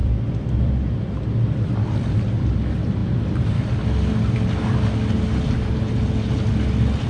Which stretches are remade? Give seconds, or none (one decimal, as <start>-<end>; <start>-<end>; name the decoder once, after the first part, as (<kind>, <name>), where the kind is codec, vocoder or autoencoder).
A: 0.0-1.4 (vocoder, BigVGAN v2)